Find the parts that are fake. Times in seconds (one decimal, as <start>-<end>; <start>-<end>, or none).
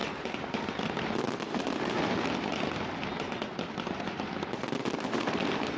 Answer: none